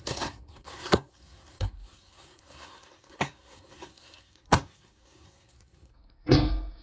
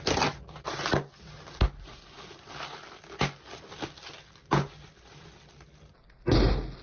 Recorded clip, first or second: second